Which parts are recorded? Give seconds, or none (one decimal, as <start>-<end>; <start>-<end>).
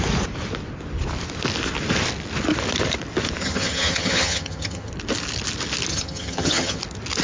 0.0-3.4; 4.9-5.9; 6.8-7.2